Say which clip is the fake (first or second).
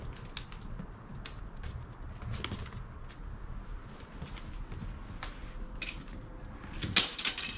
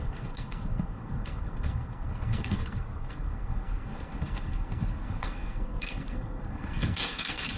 second